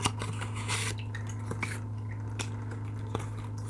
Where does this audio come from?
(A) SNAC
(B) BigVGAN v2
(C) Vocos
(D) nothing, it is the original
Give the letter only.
D